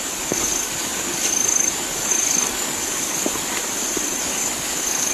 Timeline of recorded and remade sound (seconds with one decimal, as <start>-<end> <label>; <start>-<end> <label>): 0.0-3.6 remade; 3.6-4.2 recorded; 4.2-5.1 remade